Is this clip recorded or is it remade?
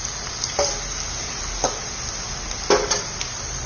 recorded